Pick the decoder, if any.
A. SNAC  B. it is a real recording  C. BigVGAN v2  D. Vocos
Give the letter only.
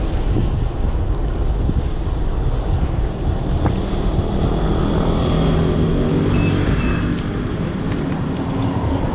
B